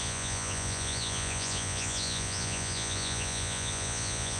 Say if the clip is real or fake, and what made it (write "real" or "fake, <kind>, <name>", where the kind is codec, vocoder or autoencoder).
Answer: fake, vocoder, Vocos